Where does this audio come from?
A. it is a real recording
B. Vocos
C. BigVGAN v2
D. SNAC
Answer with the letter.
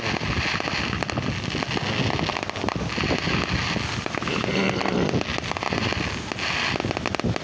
A